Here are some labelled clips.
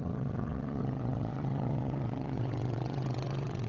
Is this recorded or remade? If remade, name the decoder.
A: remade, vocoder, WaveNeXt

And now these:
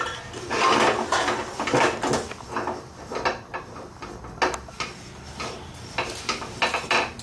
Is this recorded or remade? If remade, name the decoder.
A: recorded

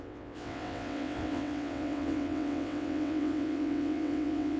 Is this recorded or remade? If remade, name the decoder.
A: remade, vocoder, WaveNeXt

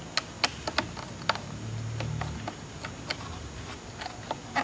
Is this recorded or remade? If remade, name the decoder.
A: recorded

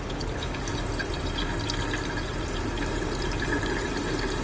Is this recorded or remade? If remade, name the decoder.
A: recorded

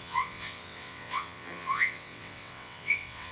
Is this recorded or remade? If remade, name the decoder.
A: remade, vocoder, WaveNeXt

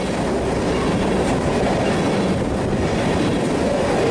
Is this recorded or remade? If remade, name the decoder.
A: recorded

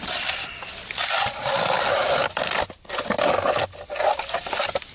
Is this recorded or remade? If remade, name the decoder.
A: recorded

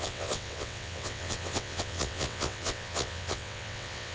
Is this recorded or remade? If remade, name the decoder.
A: remade, vocoder, WaveNeXt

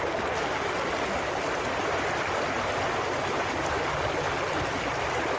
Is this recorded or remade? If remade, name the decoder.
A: recorded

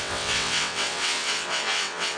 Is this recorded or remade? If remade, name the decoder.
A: remade, vocoder, WaveNeXt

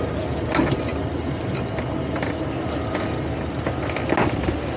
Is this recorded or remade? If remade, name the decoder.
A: recorded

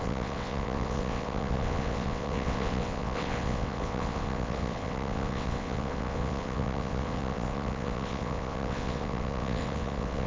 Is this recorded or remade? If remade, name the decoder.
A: remade, vocoder, WaveNeXt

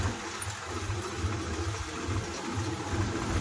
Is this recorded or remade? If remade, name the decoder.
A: recorded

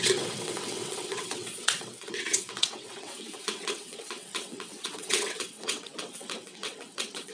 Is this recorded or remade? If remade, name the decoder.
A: remade, vocoder, WaveNeXt